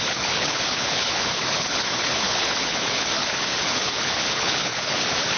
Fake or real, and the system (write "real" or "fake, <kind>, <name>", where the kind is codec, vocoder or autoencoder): fake, codec, HILCodec